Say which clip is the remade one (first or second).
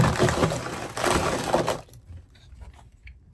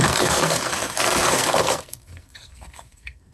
second